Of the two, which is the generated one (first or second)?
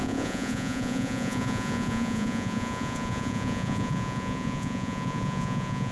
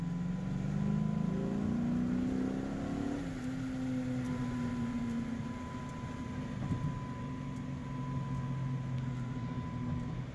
first